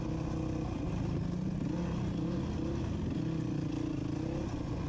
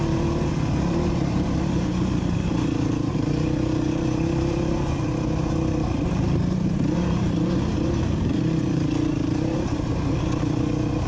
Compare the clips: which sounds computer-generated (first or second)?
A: second